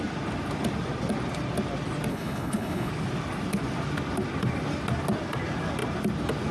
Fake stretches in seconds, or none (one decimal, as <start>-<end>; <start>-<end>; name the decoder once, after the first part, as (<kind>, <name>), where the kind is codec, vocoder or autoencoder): 2.1-2.9 (codec, HILCodec)